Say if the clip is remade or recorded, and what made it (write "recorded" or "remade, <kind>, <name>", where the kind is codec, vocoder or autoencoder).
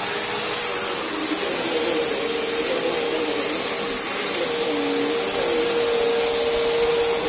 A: recorded